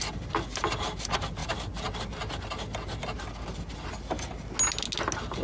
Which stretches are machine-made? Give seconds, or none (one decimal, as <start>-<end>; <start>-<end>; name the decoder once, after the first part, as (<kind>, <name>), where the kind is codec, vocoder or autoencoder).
1.4-2.4 (vocoder, BigVGAN v2)